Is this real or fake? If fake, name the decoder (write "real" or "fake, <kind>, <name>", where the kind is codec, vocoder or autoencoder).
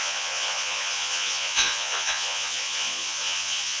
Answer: fake, vocoder, Vocos